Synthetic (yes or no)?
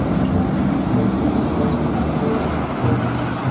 no